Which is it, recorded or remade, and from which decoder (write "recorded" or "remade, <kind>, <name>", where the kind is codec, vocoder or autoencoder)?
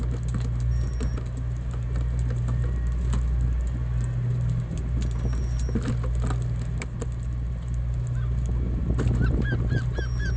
recorded